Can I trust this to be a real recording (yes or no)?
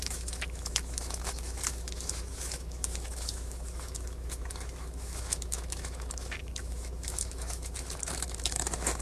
no